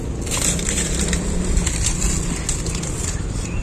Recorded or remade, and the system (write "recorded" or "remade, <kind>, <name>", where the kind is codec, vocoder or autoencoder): recorded